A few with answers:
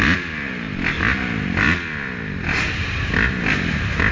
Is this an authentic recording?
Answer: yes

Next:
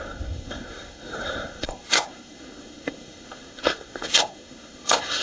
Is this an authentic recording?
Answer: no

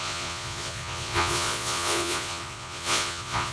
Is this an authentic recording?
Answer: no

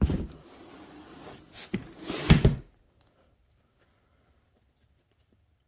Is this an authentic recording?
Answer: yes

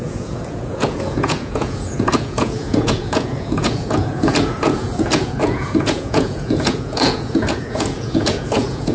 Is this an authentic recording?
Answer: no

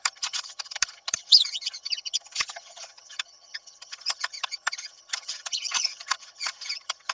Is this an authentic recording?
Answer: no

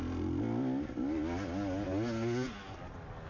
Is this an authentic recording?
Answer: yes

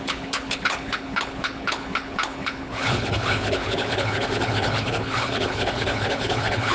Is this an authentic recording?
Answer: no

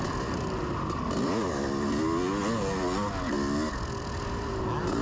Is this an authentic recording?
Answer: yes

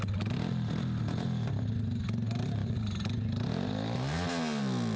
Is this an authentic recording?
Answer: yes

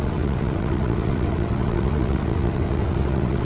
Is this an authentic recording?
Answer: no